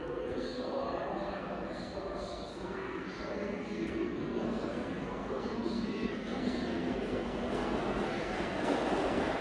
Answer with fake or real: fake